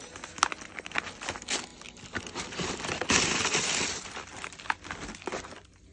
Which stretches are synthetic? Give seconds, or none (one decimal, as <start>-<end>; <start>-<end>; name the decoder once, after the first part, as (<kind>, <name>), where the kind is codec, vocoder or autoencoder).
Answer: none